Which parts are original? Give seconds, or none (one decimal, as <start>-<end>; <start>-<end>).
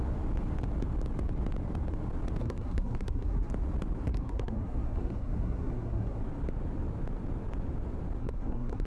0.0-2.4; 3.5-4.1; 6.2-8.2